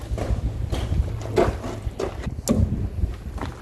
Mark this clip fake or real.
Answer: real